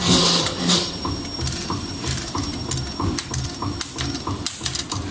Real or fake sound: real